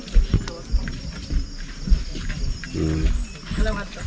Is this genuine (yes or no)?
yes